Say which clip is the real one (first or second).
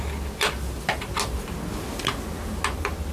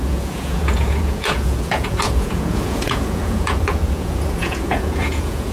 first